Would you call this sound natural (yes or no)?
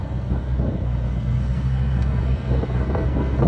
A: no